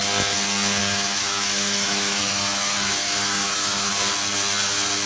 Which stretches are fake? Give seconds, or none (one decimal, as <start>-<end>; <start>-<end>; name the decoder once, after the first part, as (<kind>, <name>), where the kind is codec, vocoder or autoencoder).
0.8-3.9 (autoencoder, DAC-VAE)